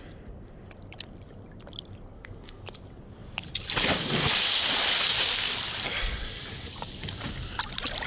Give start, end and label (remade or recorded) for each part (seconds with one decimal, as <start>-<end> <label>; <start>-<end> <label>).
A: 0.0-2.1 recorded; 2.1-2.6 remade; 2.6-8.1 recorded